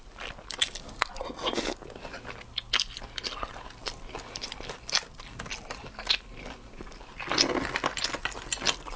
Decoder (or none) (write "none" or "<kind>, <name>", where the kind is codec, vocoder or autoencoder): none